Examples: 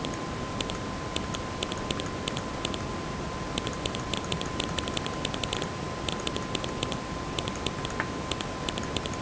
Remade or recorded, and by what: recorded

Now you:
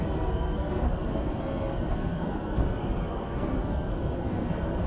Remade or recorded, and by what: remade, codec, SNAC